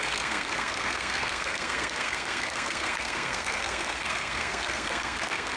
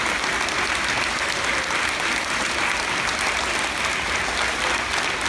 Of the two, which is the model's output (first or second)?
first